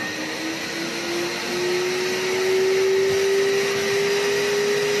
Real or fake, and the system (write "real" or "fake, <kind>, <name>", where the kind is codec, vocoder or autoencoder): real